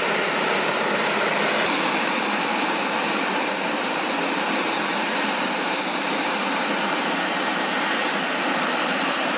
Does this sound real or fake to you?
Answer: fake